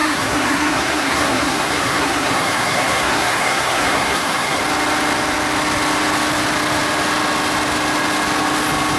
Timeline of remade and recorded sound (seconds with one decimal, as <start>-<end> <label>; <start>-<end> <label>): 0.0-4.6 remade; 4.6-9.0 recorded